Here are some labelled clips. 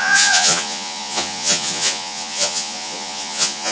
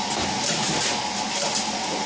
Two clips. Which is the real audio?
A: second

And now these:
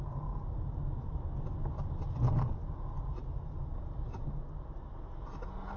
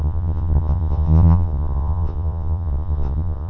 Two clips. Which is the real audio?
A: first